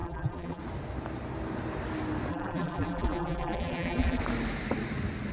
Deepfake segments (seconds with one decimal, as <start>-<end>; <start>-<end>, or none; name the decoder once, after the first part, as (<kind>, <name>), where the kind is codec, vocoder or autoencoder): 0.0-0.6 (vocoder, BigVGAN v2); 2.3-4.2